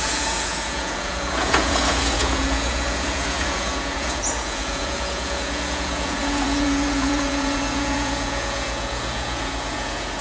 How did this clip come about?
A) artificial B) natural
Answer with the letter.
A